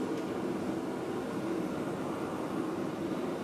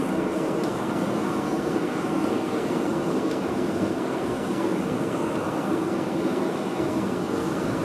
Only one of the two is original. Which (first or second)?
first